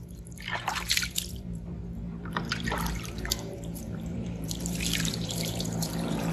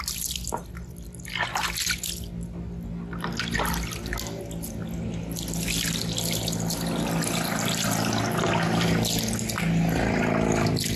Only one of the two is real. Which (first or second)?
second